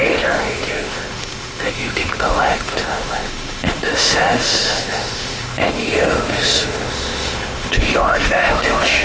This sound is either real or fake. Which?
fake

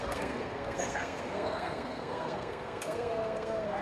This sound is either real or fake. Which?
fake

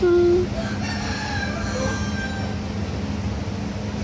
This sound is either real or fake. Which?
real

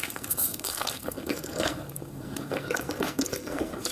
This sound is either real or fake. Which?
fake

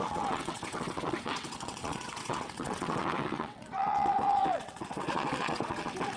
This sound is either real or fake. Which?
fake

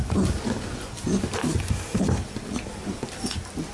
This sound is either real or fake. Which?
real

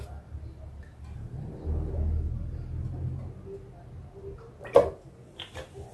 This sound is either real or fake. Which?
real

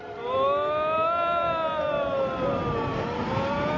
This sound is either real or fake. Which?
real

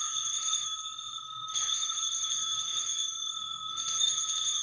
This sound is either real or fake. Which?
fake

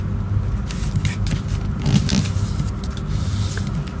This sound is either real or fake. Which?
real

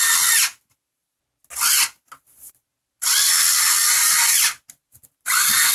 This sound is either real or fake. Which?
real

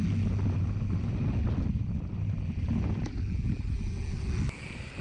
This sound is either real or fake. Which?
real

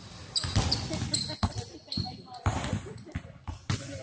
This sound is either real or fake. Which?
real